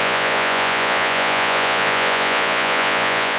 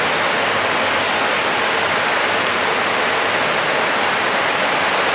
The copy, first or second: first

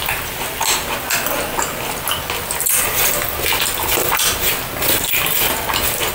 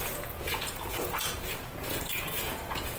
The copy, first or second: second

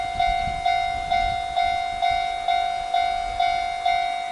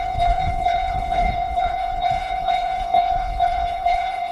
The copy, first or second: second